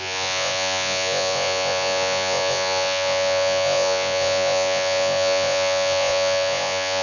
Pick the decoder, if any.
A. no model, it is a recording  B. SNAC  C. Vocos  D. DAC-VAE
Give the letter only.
C